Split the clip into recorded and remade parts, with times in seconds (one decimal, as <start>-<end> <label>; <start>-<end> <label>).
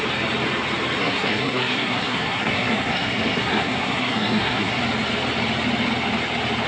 0.0-1.0 recorded; 1.0-4.8 remade; 4.8-6.7 recorded